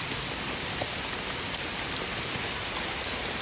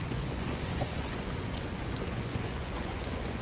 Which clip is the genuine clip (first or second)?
first